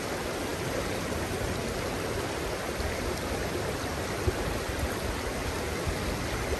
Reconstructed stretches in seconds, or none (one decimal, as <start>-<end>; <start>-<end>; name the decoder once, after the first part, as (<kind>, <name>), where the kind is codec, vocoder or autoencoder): none